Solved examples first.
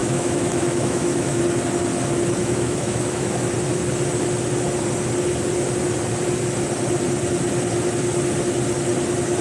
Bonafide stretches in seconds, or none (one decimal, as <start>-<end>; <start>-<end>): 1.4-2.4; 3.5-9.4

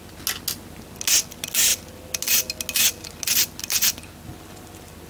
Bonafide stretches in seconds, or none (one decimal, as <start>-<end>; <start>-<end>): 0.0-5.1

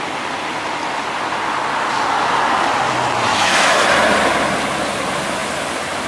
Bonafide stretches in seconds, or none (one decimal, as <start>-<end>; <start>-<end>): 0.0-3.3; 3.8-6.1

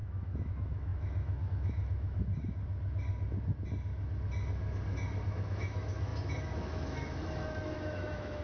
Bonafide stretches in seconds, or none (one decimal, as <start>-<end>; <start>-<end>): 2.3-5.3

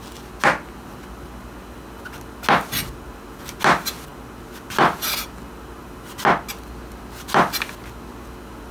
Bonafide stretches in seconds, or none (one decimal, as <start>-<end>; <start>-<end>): 0.0-8.7

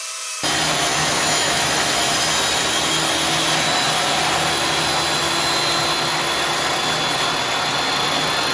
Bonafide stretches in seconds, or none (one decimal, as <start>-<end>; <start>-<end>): 0.0-0.9; 1.7-8.5

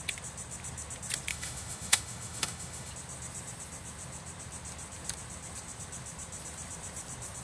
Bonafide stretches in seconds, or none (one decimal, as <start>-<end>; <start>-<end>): 0.0-1.3; 2.9-7.4